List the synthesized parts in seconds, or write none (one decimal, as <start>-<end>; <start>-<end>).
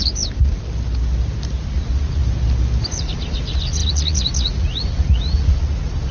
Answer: 1.7-2.2; 3.0-6.1